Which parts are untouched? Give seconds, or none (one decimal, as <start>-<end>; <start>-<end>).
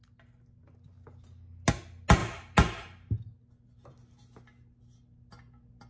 0.0-5.9